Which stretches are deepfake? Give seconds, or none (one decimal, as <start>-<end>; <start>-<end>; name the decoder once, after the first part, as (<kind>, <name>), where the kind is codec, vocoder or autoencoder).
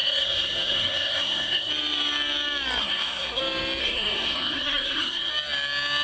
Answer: 0.0-1.7 (codec, SNAC); 2.8-3.4; 3.8-5.3